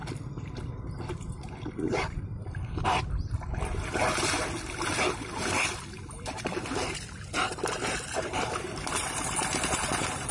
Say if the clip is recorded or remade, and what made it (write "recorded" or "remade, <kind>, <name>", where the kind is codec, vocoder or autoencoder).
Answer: remade, vocoder, BigVGAN v2